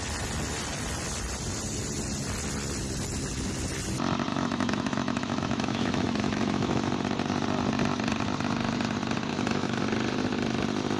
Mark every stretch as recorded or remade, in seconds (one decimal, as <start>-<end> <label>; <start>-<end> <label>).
0.0-4.3 recorded; 4.3-6.9 remade; 6.9-9.3 recorded; 9.3-9.8 remade; 9.8-11.0 recorded